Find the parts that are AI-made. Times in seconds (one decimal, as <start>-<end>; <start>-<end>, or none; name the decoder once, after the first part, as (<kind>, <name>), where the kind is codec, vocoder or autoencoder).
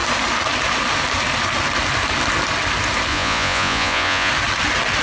3.1-4.3 (vocoder, Vocos)